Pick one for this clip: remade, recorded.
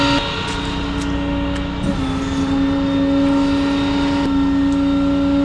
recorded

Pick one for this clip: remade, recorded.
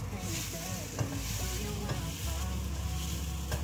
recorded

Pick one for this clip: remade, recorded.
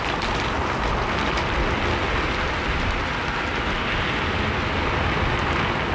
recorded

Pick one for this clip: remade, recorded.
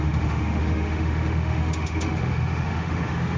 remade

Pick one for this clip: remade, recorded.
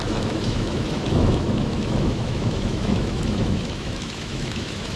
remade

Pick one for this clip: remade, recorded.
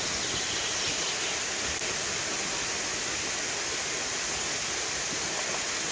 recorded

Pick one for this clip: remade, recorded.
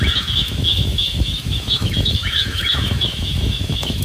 remade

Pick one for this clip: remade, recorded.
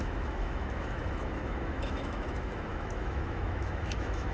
remade